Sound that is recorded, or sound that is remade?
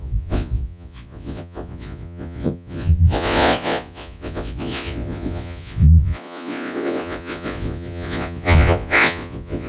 remade